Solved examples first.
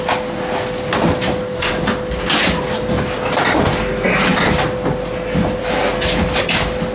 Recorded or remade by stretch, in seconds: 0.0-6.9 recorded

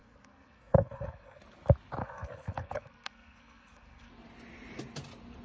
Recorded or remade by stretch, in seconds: 0.0-1.4 remade; 1.4-2.0 recorded; 2.0-4.1 remade; 4.1-5.4 recorded

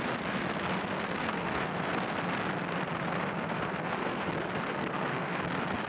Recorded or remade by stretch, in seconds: 0.0-1.2 recorded; 1.2-1.9 remade; 1.9-3.2 recorded; 3.2-4.3 remade; 4.3-4.7 recorded; 4.7-5.4 remade; 5.4-5.9 recorded

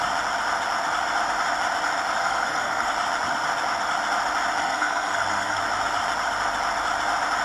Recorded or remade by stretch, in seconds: 0.0-2.2 recorded; 2.2-2.9 remade; 2.9-4.6 recorded; 4.6-5.6 remade; 5.6-7.4 recorded

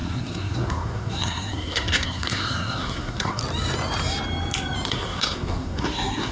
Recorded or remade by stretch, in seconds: 0.0-3.4 remade; 3.4-4.9 recorded; 4.9-6.3 remade

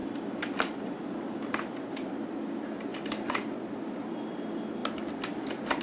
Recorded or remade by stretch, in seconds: 0.0-5.8 recorded

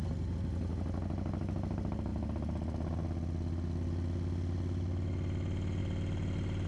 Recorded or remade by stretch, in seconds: 0.0-6.7 recorded